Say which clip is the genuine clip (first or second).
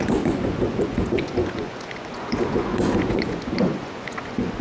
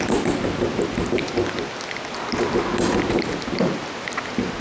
second